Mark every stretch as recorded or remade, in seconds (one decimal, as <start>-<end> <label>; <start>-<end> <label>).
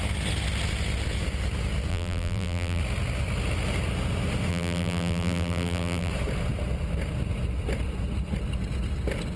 0.0-1.9 recorded; 1.9-2.8 remade; 2.8-4.5 recorded; 4.5-6.1 remade; 6.1-9.4 recorded